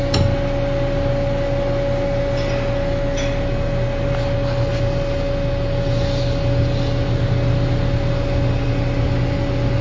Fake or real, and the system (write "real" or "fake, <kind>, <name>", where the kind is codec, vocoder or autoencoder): real